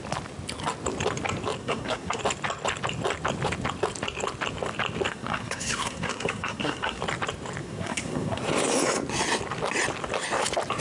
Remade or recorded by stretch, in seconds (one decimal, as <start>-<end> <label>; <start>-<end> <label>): 0.0-1.6 recorded; 1.6-2.2 remade; 2.2-5.1 recorded; 5.1-7.0 remade; 7.0-7.6 recorded; 7.6-8.4 remade; 8.4-10.8 recorded